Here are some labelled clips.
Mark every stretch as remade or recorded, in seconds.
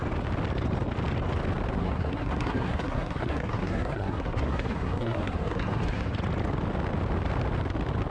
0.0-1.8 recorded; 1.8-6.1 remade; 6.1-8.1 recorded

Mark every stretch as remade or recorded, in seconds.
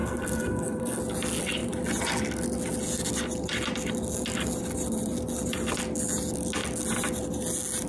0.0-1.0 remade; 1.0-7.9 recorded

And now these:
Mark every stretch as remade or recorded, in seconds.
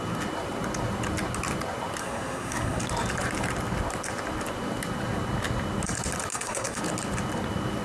0.0-2.0 recorded; 2.0-2.8 remade; 2.8-6.3 recorded; 6.3-6.8 remade; 6.8-7.8 recorded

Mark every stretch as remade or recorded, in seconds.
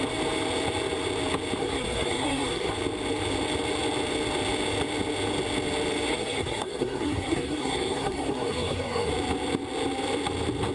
0.0-1.6 recorded; 1.6-2.7 remade; 2.7-6.1 recorded; 6.1-9.1 remade; 9.1-10.7 recorded